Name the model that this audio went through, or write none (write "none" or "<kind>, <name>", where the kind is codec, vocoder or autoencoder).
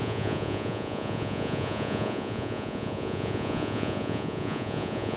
vocoder, Vocos